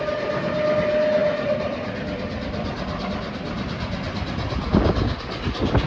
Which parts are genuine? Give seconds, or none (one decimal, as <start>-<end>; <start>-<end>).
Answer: 0.0-1.2; 3.0-5.9